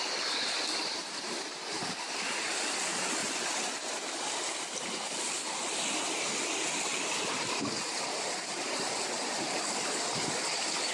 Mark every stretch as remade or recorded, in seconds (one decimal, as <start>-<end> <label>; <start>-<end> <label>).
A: 0.0-10.9 recorded